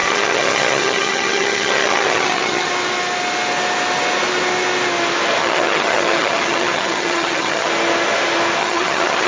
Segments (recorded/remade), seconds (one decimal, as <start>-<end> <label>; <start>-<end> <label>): 0.0-2.7 remade; 2.7-5.4 recorded; 5.4-7.7 remade; 7.7-8.6 recorded; 8.6-9.3 remade